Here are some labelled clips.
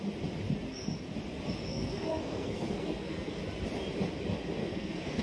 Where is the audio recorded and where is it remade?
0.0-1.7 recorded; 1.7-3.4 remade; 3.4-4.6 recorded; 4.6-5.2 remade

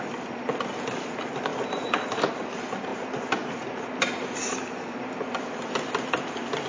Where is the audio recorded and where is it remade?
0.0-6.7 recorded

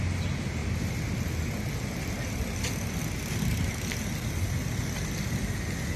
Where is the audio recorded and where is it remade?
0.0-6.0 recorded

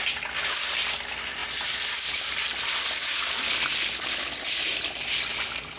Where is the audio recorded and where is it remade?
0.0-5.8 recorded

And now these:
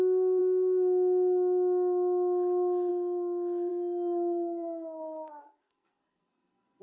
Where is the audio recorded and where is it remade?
0.0-3.7 recorded; 3.7-6.8 remade